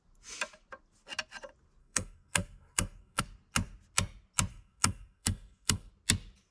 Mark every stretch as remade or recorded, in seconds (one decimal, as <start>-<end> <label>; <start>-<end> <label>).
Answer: 0.0-1.8 recorded; 1.8-3.2 remade; 3.2-4.5 recorded; 4.5-5.9 remade; 5.9-6.5 recorded